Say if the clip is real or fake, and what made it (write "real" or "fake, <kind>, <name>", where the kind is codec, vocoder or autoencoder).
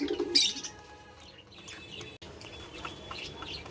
real